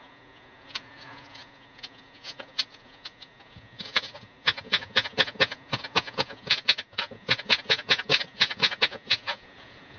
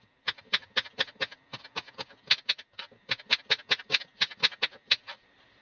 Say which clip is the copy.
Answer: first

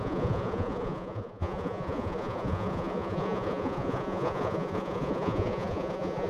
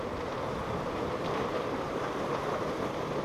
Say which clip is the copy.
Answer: first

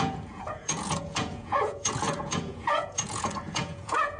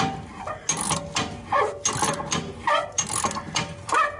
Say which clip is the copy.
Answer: first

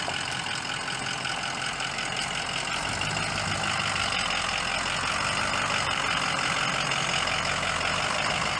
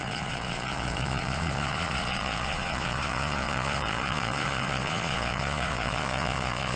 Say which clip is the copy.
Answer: second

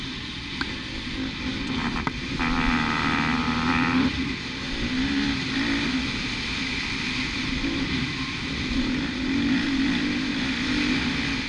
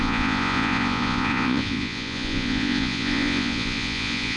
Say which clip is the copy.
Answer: second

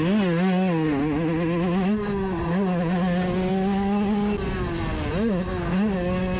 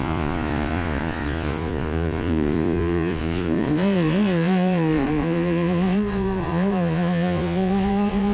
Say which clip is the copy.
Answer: second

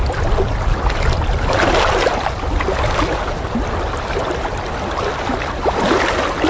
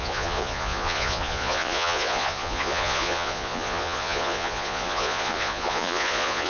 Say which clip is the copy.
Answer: second